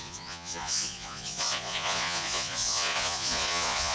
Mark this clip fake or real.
fake